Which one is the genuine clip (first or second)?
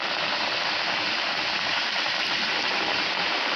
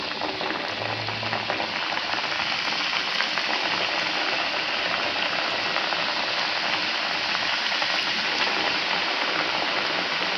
second